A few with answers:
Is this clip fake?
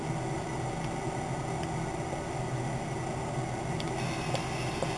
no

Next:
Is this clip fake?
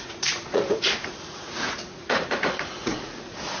yes